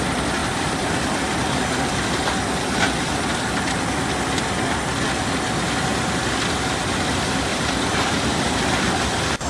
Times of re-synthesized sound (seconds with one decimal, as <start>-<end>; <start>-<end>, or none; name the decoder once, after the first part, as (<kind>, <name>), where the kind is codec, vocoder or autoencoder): 0.4-1.8 (vocoder, BigVGAN v2); 7.5-9.5